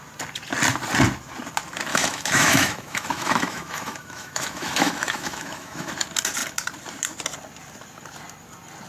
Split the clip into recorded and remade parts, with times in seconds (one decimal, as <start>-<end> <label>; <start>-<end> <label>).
0.0-1.9 recorded; 1.9-5.9 remade; 5.9-8.9 recorded